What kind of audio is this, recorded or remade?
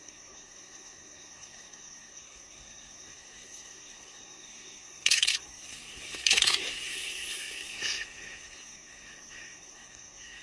remade